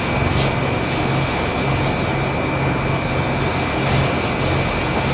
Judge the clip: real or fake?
real